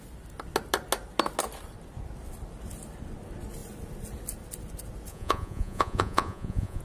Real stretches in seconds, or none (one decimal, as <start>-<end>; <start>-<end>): 0.0-5.1